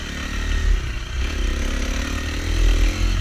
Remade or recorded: recorded